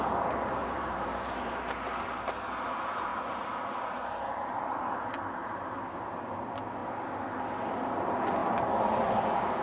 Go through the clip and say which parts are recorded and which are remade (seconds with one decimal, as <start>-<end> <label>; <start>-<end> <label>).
0.0-0.6 recorded; 0.6-1.5 remade; 1.5-9.6 recorded